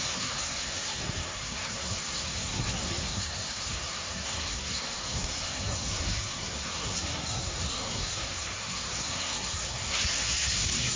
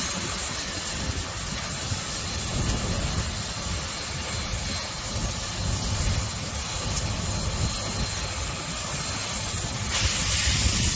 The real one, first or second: second